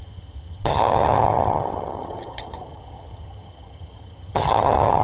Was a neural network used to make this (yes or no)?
yes